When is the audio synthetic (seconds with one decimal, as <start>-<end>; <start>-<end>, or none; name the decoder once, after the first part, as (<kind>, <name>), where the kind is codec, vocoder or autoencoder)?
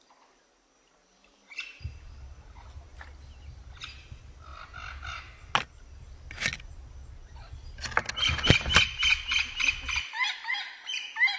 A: none